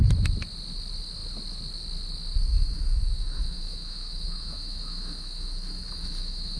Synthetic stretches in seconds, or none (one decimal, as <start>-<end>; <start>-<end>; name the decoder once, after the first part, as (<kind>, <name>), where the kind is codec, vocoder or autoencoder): 2.5-6.6 (autoencoder, DAC-VAE)